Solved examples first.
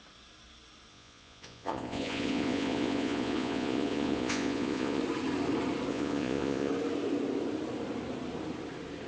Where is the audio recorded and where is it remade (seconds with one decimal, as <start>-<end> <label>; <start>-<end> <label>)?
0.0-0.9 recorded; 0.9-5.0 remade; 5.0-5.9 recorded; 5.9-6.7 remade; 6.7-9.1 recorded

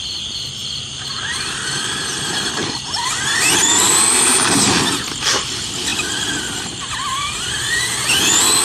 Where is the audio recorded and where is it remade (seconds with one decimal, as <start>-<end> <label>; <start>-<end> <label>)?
0.0-0.6 recorded; 0.6-4.7 remade; 4.7-5.9 recorded; 5.9-7.7 remade; 7.7-8.6 recorded

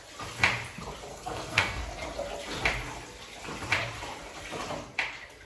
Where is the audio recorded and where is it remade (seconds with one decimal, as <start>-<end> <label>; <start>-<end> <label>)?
0.0-1.1 recorded; 1.1-1.8 remade; 1.8-5.5 recorded

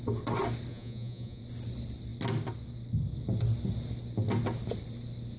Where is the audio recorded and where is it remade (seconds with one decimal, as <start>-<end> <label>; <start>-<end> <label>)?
0.0-0.7 recorded; 0.7-1.4 remade; 1.4-5.4 recorded